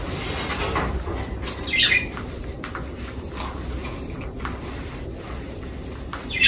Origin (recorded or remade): recorded